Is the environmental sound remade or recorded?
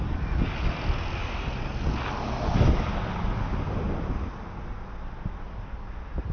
recorded